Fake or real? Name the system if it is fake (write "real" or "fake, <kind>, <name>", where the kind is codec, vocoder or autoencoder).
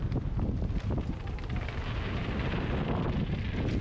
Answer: real